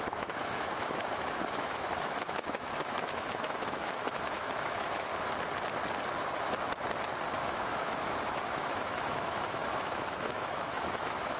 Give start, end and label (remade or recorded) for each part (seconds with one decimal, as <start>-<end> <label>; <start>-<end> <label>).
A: 0.0-5.1 remade; 5.1-7.4 recorded; 7.4-11.4 remade

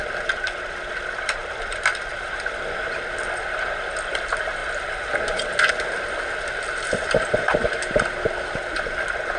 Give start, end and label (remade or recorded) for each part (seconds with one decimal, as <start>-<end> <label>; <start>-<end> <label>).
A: 0.0-9.4 recorded

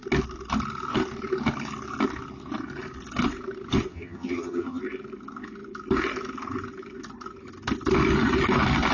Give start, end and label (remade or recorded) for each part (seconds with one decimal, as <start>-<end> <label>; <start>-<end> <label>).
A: 0.0-3.9 recorded; 3.9-4.8 remade; 4.8-8.9 recorded